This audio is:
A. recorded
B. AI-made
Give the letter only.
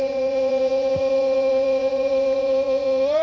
B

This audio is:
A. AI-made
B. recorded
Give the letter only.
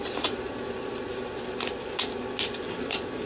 B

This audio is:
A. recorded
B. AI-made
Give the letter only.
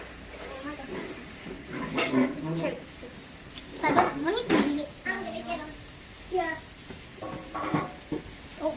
B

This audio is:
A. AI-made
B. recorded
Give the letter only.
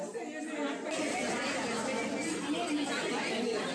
B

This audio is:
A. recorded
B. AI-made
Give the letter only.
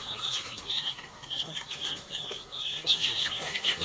B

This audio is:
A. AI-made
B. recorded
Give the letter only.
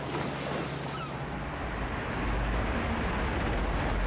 B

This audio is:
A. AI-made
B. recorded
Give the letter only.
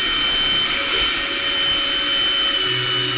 B